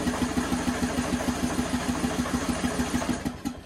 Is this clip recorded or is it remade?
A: recorded